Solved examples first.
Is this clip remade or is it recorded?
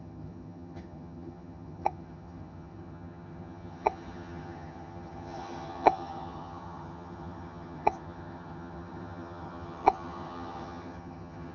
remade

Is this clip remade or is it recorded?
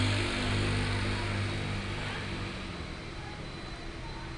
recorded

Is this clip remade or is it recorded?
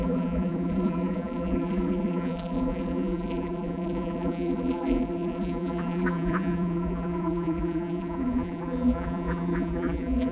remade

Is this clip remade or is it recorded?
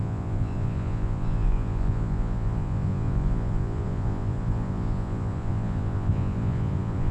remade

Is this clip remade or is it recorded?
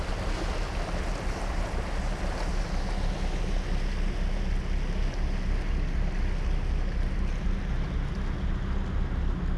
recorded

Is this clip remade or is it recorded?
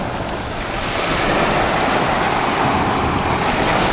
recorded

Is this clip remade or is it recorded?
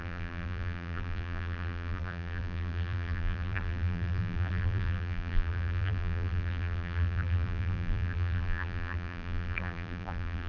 remade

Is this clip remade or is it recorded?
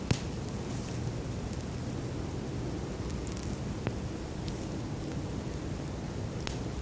recorded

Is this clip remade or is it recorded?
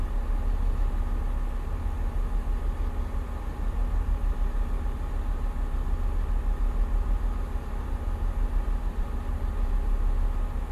recorded